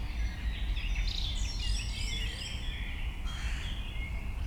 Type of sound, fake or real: real